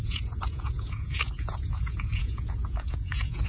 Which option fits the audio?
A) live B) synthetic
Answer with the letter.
B